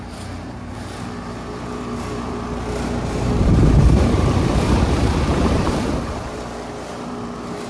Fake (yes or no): yes